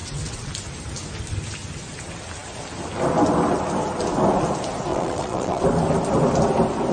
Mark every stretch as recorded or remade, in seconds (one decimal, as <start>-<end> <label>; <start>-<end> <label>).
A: 0.0-0.5 remade; 0.5-4.9 recorded; 4.9-5.6 remade; 5.6-6.9 recorded